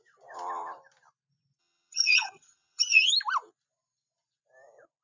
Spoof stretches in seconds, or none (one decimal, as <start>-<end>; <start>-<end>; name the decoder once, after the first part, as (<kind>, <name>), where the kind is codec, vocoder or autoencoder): 1.6-3.1 (vocoder, HiFi-GAN)

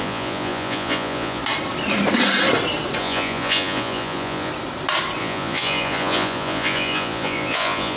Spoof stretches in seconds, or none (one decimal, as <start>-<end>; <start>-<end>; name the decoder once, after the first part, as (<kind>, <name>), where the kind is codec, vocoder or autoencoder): 0.0-1.4 (vocoder, Vocos); 3.0-4.5; 5.2-8.0

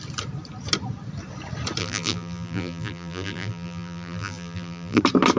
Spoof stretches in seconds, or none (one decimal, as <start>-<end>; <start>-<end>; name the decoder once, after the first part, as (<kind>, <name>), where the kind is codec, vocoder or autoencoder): 1.8-5.0 (vocoder, BigVGAN v2)

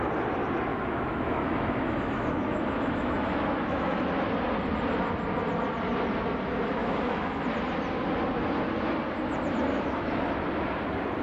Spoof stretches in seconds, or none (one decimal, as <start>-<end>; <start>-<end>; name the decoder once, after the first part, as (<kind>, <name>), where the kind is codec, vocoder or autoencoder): 0.7-4.0 (autoencoder, DAC-VAE); 6.8-7.4; 9.7-10.3

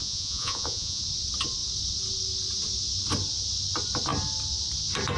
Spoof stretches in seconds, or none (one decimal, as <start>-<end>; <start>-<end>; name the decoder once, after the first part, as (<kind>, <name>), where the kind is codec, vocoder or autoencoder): 0.0-1.0 (vocoder, Vocos)

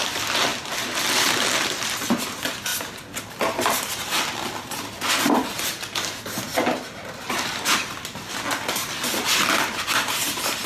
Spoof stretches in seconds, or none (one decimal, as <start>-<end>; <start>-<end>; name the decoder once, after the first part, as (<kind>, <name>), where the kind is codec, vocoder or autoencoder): none

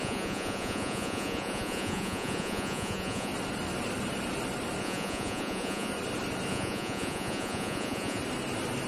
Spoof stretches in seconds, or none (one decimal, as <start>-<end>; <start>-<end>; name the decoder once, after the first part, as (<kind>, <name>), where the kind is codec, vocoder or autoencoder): 0.0-3.3 (vocoder, Vocos); 4.8-5.9; 6.5-8.2